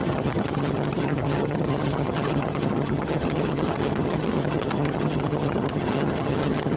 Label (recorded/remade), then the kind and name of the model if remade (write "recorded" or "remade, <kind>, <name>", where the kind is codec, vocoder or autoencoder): remade, vocoder, HiFi-GAN